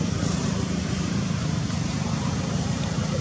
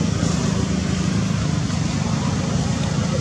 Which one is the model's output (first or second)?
first